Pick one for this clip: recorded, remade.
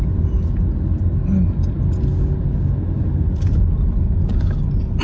recorded